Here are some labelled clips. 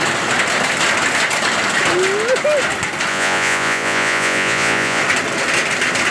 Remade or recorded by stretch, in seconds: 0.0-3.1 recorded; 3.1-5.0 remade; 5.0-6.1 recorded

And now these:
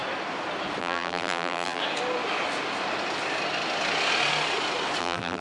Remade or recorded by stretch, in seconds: 0.0-0.8 recorded; 0.8-1.8 remade; 1.8-5.0 recorded; 5.0-5.4 remade

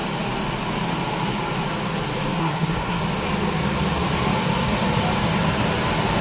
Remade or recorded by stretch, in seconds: 0.0-2.4 recorded; 2.4-3.0 remade; 3.0-6.2 recorded

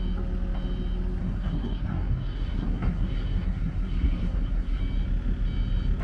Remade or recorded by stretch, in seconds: 0.0-1.2 recorded; 1.2-4.8 remade; 4.8-6.0 recorded

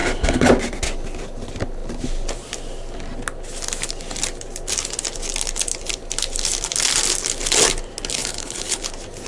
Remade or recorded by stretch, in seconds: 0.0-0.5 remade; 0.5-8.2 recorded; 8.2-8.8 remade; 8.8-9.3 recorded

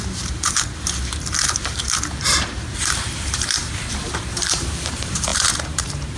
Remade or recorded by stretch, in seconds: 0.0-6.2 remade

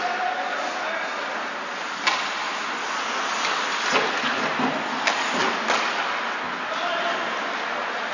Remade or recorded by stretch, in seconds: 0.0-8.1 recorded